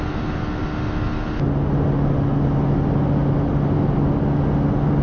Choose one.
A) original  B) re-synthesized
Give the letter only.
A